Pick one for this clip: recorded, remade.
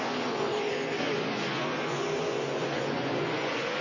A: remade